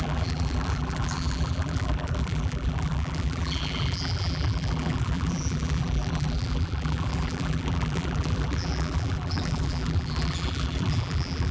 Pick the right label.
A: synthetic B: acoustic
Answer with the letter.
A